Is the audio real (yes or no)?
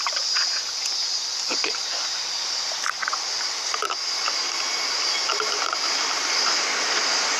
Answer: yes